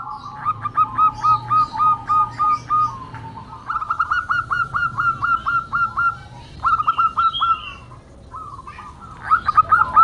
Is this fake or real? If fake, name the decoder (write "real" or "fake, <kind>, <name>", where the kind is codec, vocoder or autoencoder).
real